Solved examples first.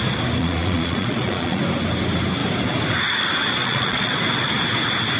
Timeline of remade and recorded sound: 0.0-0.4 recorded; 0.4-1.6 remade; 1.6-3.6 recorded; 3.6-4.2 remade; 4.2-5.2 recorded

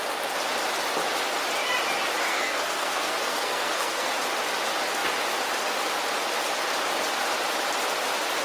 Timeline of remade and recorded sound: 0.0-2.2 recorded; 2.2-4.1 remade; 4.1-8.4 recorded